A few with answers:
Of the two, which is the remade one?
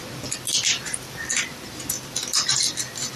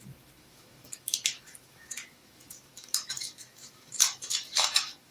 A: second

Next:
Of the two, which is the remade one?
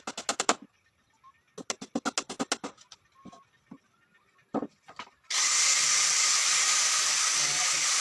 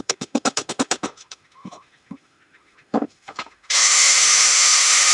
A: second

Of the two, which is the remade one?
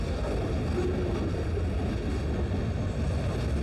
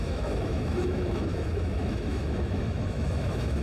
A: second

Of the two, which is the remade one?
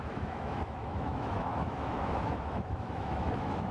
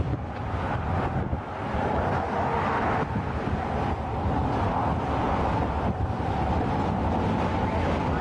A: first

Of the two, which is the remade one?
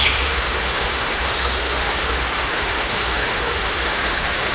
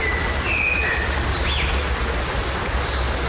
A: first